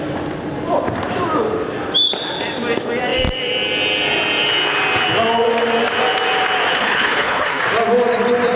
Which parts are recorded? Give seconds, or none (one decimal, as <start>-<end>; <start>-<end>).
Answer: 0.0-6.8; 7.6-8.6